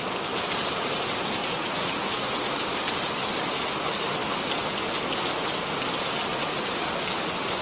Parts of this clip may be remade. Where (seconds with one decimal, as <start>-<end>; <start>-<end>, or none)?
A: 1.4-2.5; 6.3-6.8

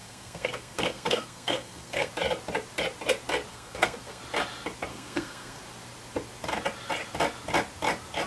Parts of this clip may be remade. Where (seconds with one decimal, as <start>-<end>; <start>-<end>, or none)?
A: 0.0-2.1; 3.5-4.2; 4.9-5.6

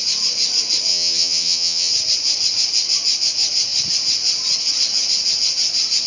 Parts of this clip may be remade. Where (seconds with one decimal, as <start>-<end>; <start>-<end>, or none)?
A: 0.9-1.9

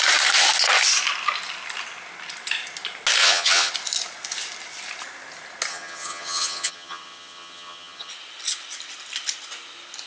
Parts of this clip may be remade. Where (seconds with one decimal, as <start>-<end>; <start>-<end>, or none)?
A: 3.2-3.7; 5.7-8.1

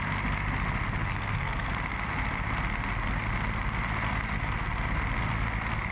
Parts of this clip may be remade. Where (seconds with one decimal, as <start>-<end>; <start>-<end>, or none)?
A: 1.0-1.7

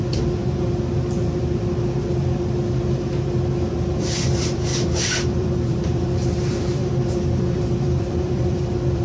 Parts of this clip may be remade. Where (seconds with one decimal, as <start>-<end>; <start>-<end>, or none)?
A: 0.0-0.4; 4.0-9.0

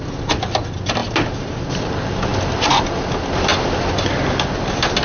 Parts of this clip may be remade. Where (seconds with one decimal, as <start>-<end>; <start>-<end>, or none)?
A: none

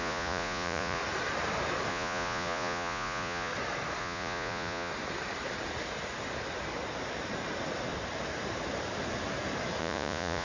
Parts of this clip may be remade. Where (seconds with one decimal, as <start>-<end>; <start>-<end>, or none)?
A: 0.0-1.0; 1.9-3.5; 4.0-4.9; 9.8-10.4